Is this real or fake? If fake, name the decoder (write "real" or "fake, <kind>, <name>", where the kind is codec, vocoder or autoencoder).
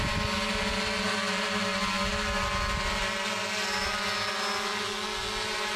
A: real